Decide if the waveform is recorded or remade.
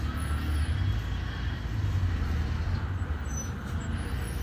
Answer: recorded